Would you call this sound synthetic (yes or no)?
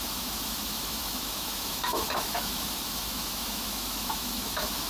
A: yes